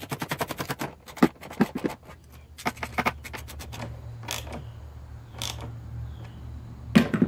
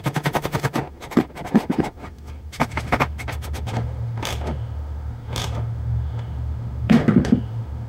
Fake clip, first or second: second